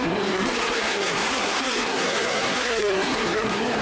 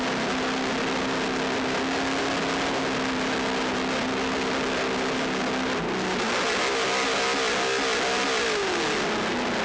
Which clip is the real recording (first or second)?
second